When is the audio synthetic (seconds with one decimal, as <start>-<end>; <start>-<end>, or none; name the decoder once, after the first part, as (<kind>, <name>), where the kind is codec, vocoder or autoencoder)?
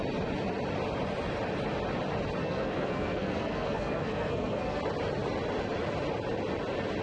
2.4-4.8 (codec, SNAC)